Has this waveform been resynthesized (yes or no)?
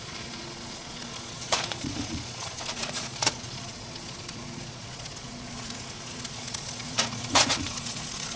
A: yes